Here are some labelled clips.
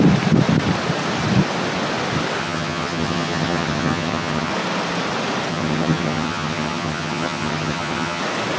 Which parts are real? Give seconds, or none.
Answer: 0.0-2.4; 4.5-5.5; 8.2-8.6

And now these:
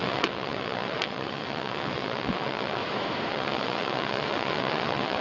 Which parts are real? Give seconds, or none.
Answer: 2.8-3.3